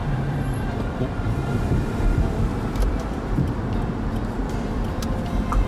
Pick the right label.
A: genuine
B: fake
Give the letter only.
B